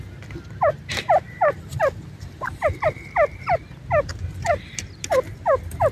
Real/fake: real